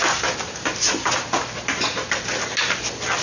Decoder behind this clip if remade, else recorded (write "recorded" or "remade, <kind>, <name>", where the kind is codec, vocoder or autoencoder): recorded